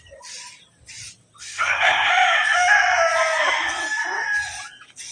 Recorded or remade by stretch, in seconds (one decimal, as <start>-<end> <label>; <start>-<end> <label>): 0.0-1.4 recorded; 1.4-2.1 remade; 2.1-5.1 recorded

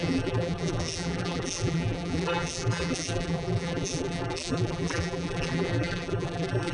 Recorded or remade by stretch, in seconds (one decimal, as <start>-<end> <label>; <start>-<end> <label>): 0.0-6.7 remade